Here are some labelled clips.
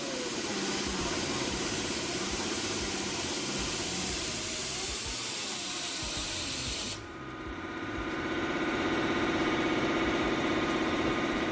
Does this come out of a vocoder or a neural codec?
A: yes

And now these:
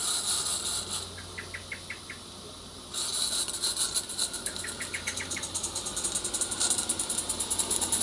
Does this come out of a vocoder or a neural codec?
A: no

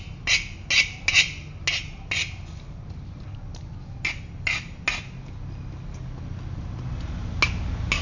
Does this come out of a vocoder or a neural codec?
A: no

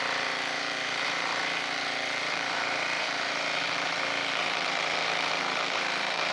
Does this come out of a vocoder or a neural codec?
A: yes